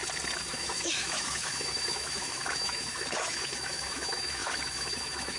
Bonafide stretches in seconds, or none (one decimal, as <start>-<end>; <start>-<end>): 0.0-0.5